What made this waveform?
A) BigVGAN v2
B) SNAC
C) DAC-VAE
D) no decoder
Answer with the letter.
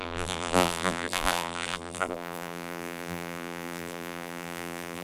A